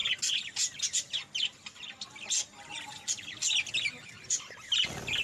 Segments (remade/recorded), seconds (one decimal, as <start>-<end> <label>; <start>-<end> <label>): 0.0-5.2 recorded